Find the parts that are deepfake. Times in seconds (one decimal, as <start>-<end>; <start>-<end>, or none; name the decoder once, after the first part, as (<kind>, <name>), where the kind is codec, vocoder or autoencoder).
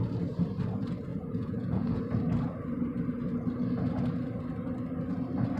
1.1-2.0 (vocoder, Vocos)